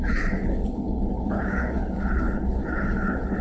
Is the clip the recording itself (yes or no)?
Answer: no